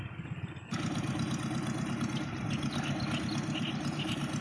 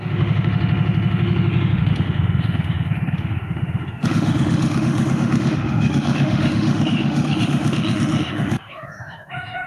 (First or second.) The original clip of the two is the first